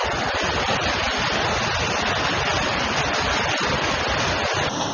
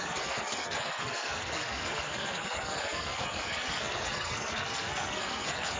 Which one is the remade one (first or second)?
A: second